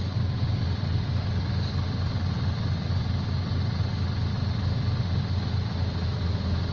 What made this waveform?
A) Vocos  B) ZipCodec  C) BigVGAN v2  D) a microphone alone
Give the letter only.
D